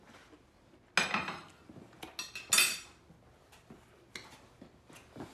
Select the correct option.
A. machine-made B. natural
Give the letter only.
B